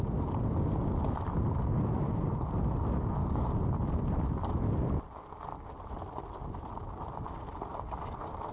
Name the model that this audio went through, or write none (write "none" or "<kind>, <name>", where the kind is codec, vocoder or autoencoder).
none